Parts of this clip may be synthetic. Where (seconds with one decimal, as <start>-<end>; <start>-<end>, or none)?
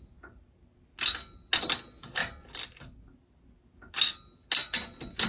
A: 2.2-3.0